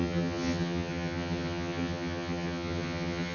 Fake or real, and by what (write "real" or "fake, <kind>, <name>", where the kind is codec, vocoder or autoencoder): fake, vocoder, HiFi-GAN